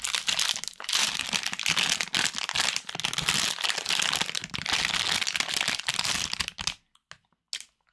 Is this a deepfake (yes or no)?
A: no